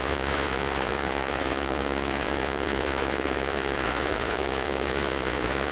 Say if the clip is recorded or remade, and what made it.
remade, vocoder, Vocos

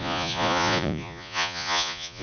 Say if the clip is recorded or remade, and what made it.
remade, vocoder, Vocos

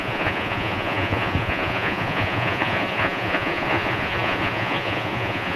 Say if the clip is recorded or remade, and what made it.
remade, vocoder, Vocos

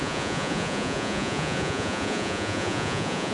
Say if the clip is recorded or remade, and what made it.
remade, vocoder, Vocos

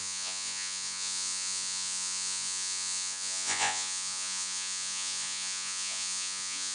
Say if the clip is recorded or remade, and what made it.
remade, vocoder, Vocos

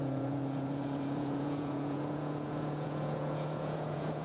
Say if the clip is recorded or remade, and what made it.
remade, vocoder, Vocos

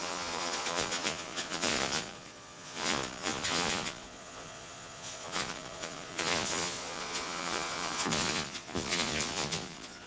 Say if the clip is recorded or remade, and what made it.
remade, vocoder, Vocos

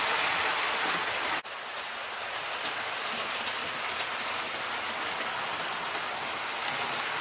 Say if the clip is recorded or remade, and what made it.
recorded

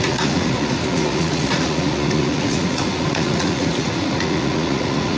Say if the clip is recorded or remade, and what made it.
remade, vocoder, Vocos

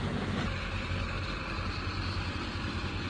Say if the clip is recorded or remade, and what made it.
recorded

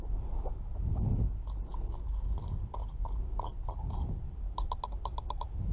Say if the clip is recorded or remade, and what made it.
recorded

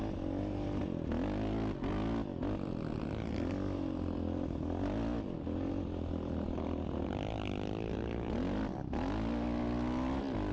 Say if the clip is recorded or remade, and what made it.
recorded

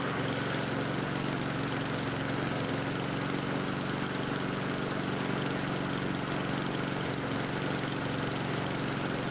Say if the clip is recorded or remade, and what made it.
recorded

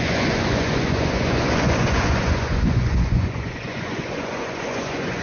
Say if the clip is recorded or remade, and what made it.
remade, vocoder, Vocos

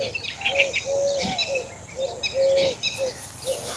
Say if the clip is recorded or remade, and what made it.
recorded